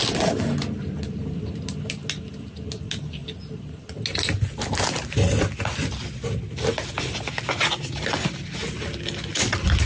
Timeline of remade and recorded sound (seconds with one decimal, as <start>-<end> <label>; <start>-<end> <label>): 0.0-9.9 recorded